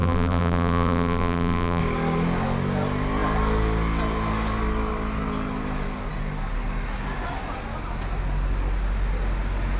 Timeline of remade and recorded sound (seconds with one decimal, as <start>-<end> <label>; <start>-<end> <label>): 0.0-1.8 remade; 1.8-9.8 recorded